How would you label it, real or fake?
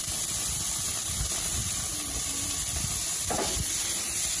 real